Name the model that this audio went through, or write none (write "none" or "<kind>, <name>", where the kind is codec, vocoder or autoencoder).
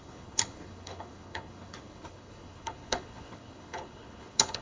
codec, HILCodec